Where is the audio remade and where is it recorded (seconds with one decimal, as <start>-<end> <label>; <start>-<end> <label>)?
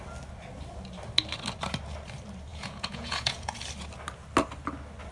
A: 0.0-2.5 recorded; 2.5-3.6 remade; 3.6-5.1 recorded